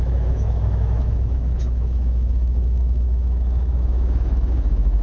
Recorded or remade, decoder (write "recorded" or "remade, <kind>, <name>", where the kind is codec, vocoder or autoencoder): remade, autoencoder, DAC-VAE